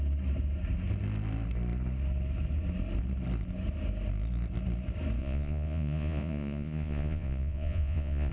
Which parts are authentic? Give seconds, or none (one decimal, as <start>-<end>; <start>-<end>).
0.0-5.2